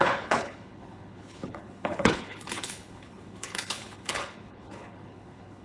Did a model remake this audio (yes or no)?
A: yes